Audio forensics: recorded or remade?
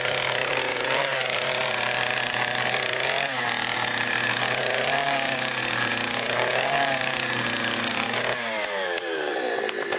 remade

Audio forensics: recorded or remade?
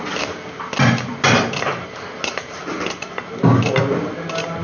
recorded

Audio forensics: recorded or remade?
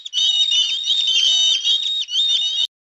recorded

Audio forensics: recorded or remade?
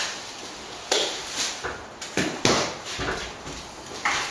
recorded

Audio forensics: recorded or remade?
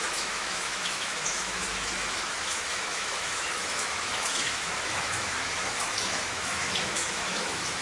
remade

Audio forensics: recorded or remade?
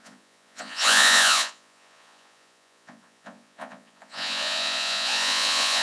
remade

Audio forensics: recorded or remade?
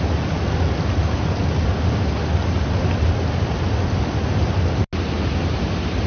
recorded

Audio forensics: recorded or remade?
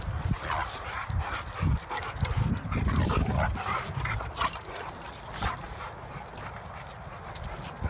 recorded